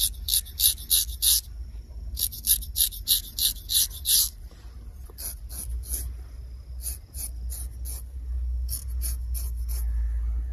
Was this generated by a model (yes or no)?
no